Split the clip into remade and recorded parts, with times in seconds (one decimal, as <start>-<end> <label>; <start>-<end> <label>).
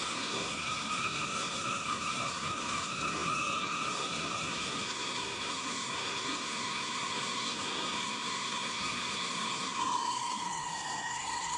0.0-11.6 remade